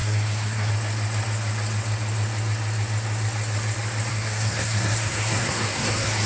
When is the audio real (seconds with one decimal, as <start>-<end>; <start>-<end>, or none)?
0.7-4.1